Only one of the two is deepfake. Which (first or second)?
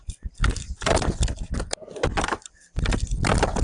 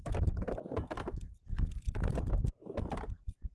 first